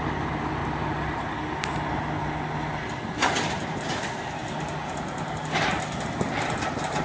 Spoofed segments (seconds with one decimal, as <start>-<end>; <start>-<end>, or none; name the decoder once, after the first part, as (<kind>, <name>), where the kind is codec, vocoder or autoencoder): none

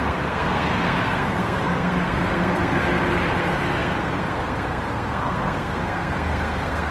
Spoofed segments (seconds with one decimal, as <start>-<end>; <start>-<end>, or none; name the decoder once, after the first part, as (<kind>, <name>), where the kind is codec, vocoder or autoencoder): 0.0-2.8 (codec, SNAC); 3.4-6.9

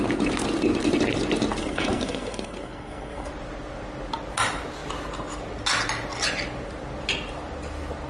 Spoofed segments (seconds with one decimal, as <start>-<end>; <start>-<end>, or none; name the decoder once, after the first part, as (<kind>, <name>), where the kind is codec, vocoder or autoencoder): 1.6-3.3 (codec, SNAC)

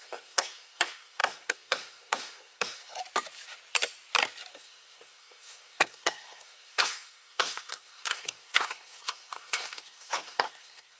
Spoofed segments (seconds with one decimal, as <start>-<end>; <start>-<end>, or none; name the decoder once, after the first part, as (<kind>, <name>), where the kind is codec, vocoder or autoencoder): 0.0-3.0 (codec, SNAC); 4.5-11.0